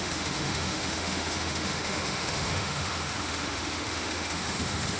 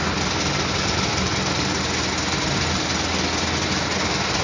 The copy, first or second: first